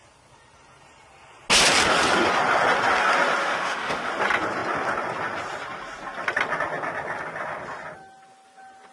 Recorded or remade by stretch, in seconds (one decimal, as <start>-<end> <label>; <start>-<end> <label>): 0.0-3.4 recorded; 3.4-4.1 remade; 4.1-8.9 recorded